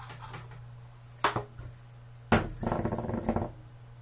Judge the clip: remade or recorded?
recorded